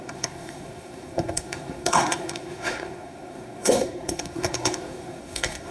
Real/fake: fake